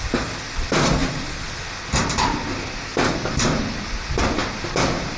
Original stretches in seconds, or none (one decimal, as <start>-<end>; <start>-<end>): 0.0-2.9; 3.9-5.2

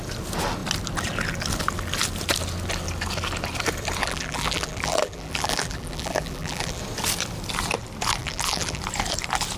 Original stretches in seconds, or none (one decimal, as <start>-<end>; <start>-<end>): 0.0-4.0; 6.8-8.2; 8.8-9.6